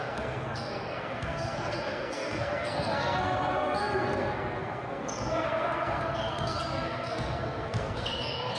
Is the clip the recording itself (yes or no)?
no